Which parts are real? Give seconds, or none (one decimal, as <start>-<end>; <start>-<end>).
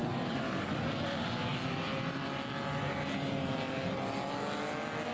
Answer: 0.7-5.1